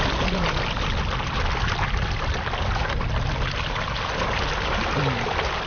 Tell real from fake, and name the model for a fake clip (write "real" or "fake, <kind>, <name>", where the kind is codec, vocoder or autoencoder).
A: real